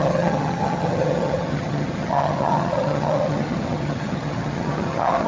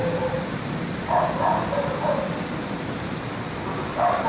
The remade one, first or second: first